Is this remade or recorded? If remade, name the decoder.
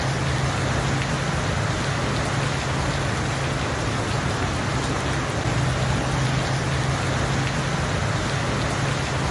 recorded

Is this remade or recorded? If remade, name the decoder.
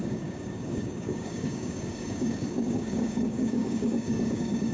remade, codec, DAC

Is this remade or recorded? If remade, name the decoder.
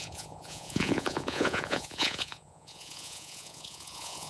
remade, vocoder, Vocos